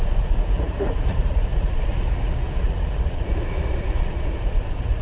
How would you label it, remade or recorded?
remade